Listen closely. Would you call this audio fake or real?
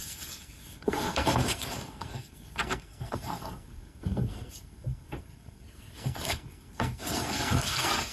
fake